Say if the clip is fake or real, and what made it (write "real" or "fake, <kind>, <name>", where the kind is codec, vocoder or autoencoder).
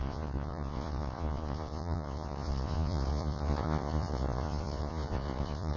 fake, vocoder, Vocos